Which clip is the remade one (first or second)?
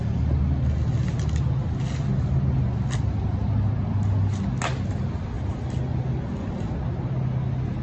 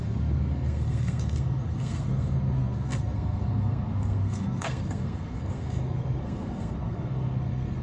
second